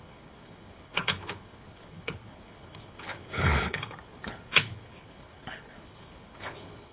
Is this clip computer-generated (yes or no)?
yes